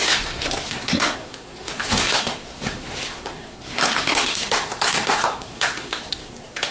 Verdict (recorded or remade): remade